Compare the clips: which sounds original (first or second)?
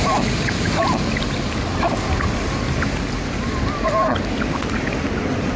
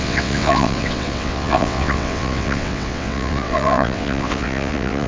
first